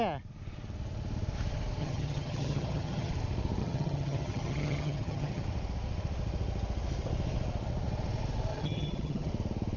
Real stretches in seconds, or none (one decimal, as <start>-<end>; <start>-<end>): 0.0-1.8; 3.1-3.6; 5.4-8.5; 9.3-9.8